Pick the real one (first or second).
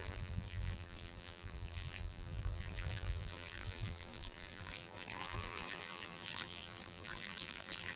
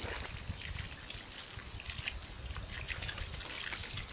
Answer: second